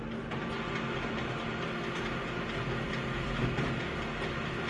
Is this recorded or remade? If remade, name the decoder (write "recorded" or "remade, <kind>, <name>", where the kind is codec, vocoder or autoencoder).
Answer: recorded